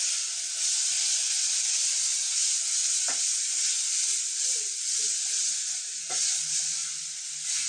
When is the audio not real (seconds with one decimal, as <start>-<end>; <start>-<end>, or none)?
none